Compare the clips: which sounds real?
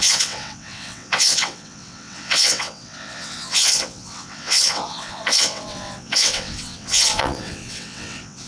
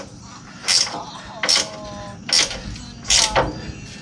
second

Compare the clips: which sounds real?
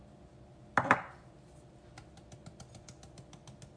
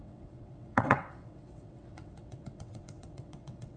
first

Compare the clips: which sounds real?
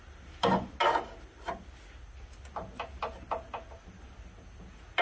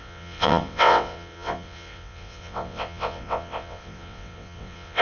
first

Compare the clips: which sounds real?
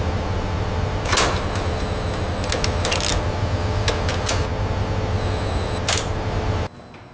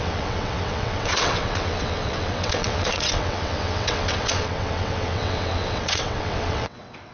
first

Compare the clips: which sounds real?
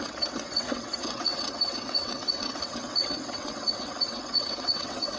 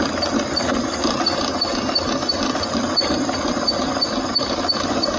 second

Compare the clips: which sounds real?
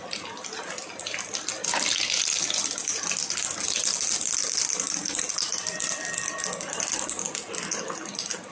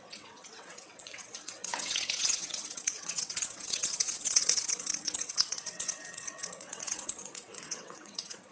first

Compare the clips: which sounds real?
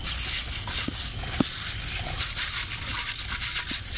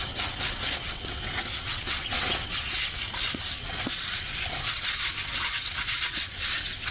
first